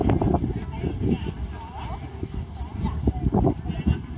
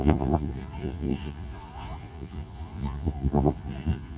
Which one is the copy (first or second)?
second